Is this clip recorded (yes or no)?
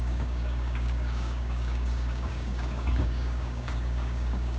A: no